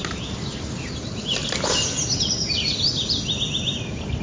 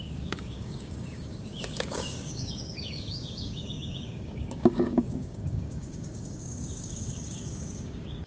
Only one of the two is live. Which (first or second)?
first